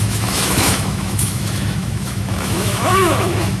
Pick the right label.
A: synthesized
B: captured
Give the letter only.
A